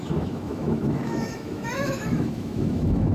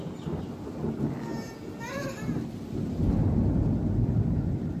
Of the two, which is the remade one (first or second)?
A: first